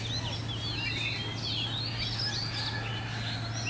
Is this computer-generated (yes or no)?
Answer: no